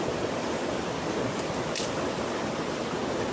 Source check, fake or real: real